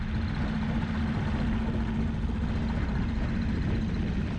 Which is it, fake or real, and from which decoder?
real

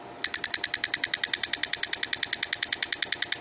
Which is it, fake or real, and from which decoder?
real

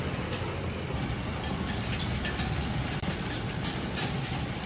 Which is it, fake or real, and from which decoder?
real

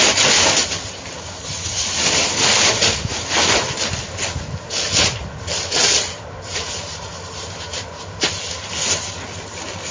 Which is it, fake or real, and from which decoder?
real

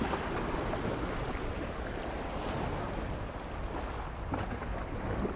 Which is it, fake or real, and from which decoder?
real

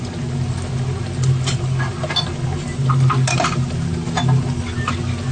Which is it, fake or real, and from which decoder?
real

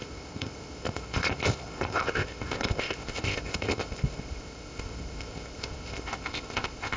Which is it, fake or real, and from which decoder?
fake, codec, ZipCodec